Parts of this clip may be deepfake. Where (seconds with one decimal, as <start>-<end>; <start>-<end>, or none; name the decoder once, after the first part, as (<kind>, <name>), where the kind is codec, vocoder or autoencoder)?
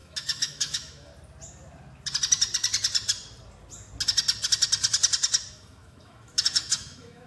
0.0-1.1 (autoencoder, DAC-VAE); 5.5-7.3